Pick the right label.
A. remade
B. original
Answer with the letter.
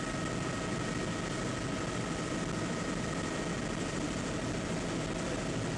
B